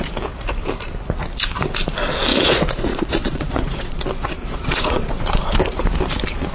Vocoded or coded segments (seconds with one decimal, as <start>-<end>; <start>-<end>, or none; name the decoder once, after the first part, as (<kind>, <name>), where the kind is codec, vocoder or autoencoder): 2.3-4.0 (vocoder, Vocos); 4.4-5.2